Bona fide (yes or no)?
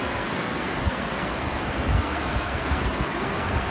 no